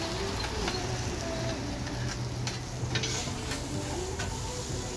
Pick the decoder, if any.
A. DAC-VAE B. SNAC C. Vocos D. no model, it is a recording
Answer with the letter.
D